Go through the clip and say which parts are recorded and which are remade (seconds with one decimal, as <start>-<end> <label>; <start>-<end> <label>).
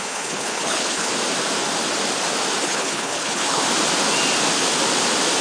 0.0-1.1 remade; 1.1-2.6 recorded; 2.6-3.6 remade; 3.6-5.4 recorded